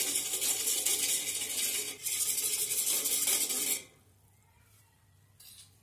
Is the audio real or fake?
real